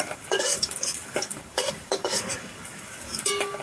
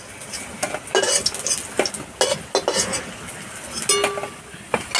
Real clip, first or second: second